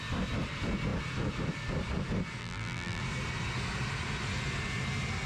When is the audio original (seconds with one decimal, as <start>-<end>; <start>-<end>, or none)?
0.0-2.4; 3.0-5.3